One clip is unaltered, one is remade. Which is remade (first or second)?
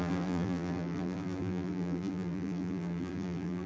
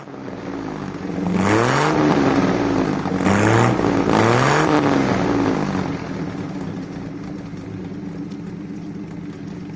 first